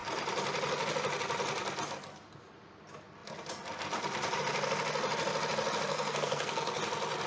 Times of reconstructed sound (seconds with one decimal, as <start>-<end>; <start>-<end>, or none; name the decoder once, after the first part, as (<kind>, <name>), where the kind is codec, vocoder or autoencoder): 5.9-6.8 (codec, SNAC)